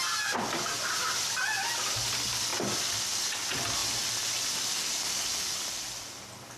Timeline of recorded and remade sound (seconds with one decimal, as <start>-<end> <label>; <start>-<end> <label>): 0.0-3.8 recorded; 3.8-5.0 remade; 5.0-6.6 recorded

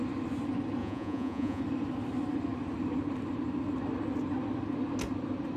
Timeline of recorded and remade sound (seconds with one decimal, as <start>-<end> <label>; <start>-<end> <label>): 0.0-0.8 recorded; 0.8-1.6 remade; 1.6-5.6 recorded